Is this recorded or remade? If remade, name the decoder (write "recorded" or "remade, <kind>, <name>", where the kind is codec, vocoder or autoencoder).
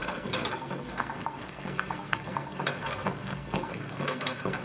remade, codec, SNAC